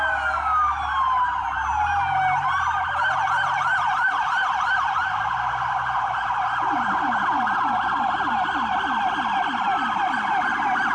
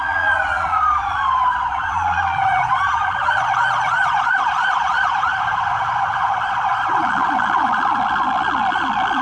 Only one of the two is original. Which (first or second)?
first